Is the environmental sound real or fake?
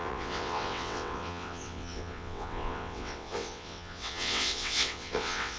fake